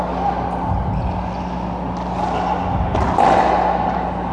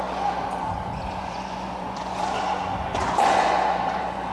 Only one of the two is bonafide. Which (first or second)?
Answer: first